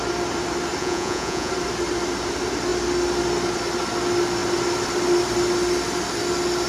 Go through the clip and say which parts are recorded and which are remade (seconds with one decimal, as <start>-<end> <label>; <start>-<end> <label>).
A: 0.0-0.8 recorded; 0.8-1.5 remade; 1.5-6.7 recorded

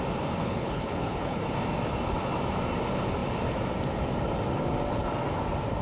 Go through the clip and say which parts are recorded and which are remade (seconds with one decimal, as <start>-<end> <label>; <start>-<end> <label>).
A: 0.0-0.4 recorded; 0.4-1.4 remade; 1.4-5.8 recorded

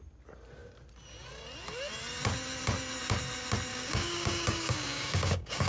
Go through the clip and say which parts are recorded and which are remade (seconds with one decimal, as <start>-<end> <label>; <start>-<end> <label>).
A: 0.0-3.7 recorded; 3.7-5.7 remade

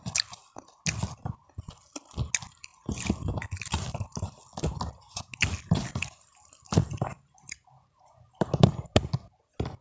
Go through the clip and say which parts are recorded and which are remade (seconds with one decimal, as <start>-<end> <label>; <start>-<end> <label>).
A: 0.0-9.8 recorded

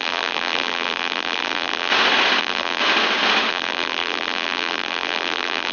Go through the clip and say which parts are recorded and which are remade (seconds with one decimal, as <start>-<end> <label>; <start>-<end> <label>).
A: 0.0-1.9 remade; 1.9-2.4 recorded; 2.4-2.8 remade; 2.8-3.5 recorded; 3.5-5.7 remade

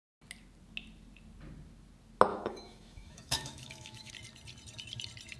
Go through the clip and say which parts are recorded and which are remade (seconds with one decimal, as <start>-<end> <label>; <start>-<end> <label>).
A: 0.0-2.3 recorded; 2.3-4.1 remade; 4.1-5.4 recorded

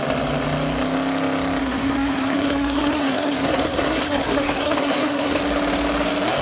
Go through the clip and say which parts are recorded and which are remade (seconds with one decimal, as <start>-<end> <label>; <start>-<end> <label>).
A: 0.0-1.6 recorded; 1.6-5.4 remade; 5.4-6.4 recorded